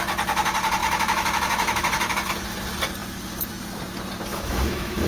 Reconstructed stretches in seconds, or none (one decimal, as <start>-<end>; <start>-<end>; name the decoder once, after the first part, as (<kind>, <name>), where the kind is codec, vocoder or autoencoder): 0.8-2.3 (autoencoder, DAC-VAE); 4.3-5.1